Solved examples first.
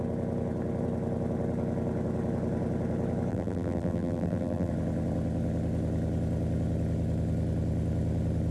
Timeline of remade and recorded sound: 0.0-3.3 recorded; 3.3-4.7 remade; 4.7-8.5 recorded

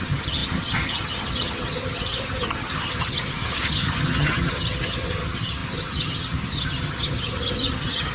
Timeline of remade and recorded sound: 0.0-8.1 remade

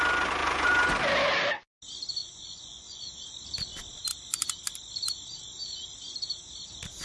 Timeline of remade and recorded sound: 0.0-0.4 recorded; 0.4-0.9 remade; 0.9-2.2 recorded; 2.2-3.1 remade; 3.1-7.0 recorded